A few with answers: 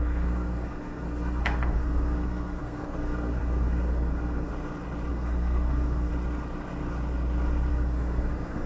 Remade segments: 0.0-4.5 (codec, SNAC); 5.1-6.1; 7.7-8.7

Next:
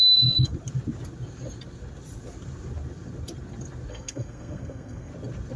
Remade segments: 0.0-0.5 (codec, SNAC); 3.9-5.1

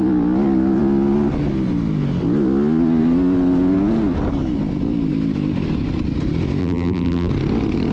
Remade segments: 6.6-7.3 (vocoder, BigVGAN v2)

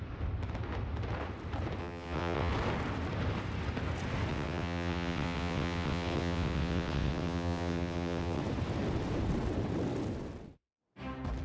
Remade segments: 1.8-2.5 (vocoder, WaveNeXt); 4.3-8.4

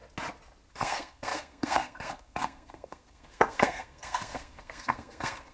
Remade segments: 0.7-5.5 (codec, SNAC)

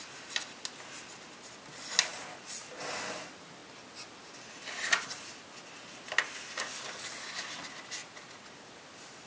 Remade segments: 8.0-8.5 (vocoder, Vocos)

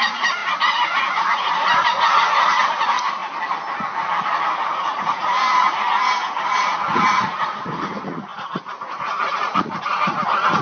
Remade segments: 0.0-3.2 (vocoder, Vocos); 4.2-10.6

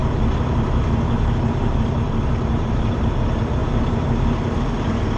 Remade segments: 0.0-3.1 (vocoder, BigVGAN v2); 3.6-4.7